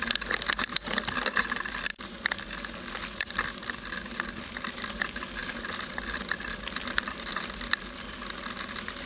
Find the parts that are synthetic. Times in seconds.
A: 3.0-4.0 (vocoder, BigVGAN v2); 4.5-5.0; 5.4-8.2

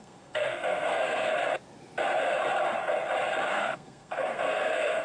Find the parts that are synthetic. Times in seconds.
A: 0.0-1.4 (codec, SNAC); 3.5-5.0

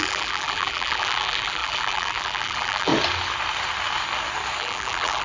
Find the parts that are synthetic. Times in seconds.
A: 0.0-2.9 (vocoder, BigVGAN v2); 4.6-5.2

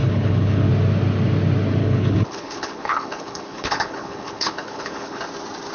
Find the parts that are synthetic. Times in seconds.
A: 0.0-0.7 (codec, HILCodec); 1.8-5.2

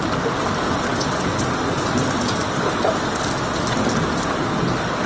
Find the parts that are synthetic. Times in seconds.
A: none